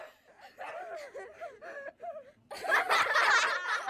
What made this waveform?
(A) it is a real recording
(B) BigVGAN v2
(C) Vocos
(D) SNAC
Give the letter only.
A